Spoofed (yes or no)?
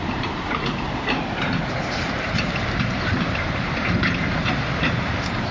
yes